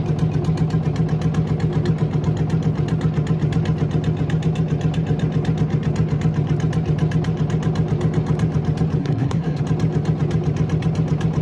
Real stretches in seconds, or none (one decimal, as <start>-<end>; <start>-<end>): 0.0-9.0; 9.6-11.4